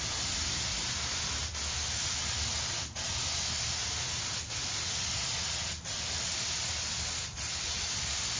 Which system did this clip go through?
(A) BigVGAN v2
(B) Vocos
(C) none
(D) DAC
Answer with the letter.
C